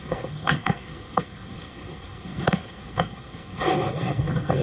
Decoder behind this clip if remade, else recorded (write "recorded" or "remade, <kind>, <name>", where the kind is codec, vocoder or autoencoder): remade, codec, SNAC